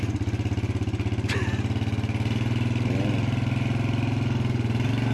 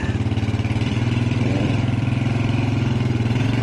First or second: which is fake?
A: second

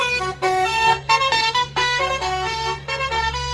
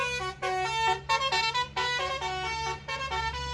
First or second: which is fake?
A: first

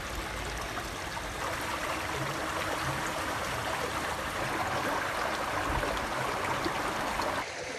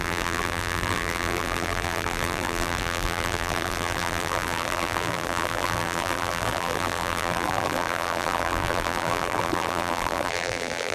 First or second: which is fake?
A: second